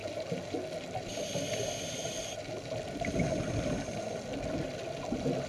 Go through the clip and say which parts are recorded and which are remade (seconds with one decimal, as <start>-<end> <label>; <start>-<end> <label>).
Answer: 0.0-5.5 recorded